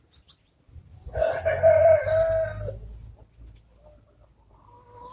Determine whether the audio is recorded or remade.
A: recorded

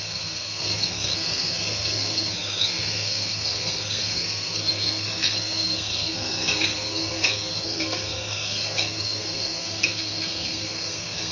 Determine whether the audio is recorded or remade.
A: remade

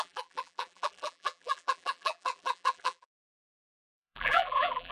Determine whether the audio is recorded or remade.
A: remade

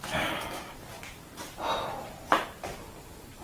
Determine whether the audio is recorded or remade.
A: remade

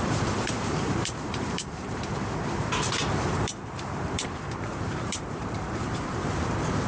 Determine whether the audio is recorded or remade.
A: remade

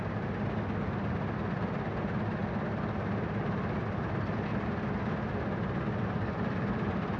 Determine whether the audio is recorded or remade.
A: recorded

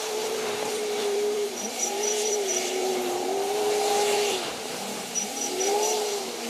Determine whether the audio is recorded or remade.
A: remade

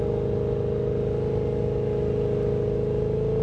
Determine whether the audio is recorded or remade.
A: recorded